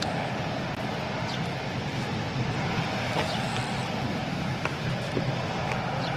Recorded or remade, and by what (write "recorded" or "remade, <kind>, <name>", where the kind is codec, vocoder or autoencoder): recorded